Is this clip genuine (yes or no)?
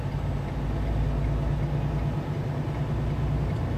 yes